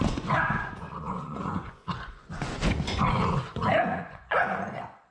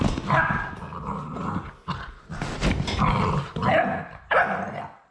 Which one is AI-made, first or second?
first